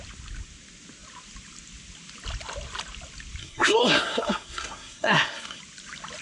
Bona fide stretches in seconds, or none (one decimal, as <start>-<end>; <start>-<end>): 0.0-3.4; 5.6-6.2